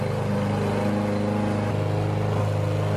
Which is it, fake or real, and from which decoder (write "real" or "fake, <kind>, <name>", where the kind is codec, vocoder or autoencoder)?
real